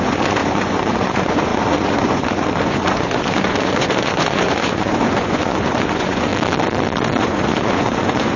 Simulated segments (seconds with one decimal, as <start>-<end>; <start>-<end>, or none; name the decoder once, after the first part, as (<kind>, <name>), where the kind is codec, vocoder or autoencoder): 0.0-6.3 (vocoder, Vocos); 7.2-8.4